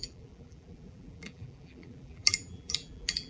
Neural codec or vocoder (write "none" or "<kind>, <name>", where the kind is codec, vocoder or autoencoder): vocoder, BigVGAN v2